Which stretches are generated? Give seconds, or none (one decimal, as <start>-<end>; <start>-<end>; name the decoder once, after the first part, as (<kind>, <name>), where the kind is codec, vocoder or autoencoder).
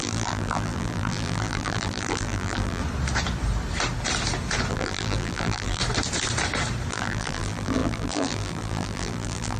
0.0-2.8 (vocoder, BigVGAN v2); 4.7-5.8; 6.9-9.6